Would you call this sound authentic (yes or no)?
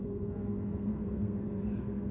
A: no